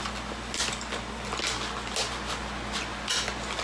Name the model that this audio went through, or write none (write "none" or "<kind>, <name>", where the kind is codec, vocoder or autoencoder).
none